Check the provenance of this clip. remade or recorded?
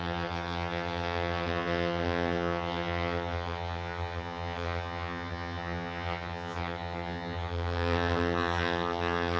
remade